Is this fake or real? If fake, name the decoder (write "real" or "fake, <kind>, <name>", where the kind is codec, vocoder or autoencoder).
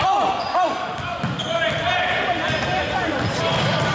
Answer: real